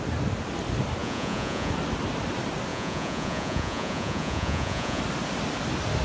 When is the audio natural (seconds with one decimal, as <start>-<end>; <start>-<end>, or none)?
0.0-1.0; 1.7-2.7; 5.0-6.0

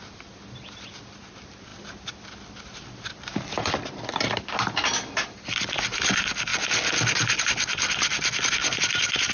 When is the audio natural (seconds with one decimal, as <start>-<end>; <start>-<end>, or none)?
0.0-1.7; 3.7-9.3